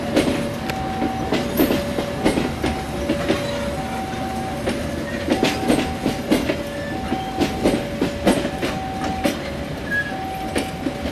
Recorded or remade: recorded